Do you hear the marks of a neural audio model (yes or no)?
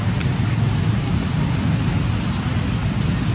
no